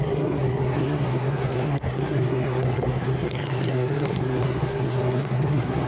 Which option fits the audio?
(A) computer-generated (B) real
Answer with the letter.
A